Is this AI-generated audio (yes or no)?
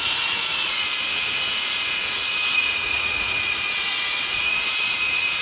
yes